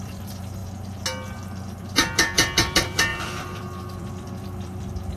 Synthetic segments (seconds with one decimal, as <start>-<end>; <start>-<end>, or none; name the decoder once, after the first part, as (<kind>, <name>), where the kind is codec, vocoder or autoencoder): 0.0-0.6 (vocoder, BigVGAN v2); 1.7-5.2